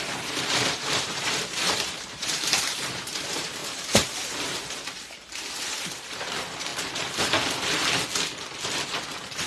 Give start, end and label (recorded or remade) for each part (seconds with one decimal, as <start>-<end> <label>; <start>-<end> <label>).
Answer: 0.0-6.7 remade; 6.7-9.1 recorded; 9.1-9.5 remade